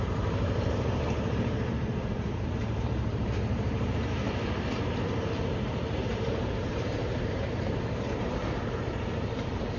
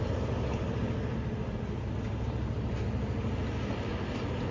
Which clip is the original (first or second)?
second